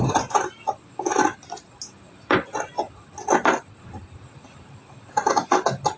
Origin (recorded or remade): recorded